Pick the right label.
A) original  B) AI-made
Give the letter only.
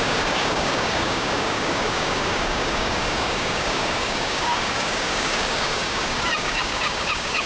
B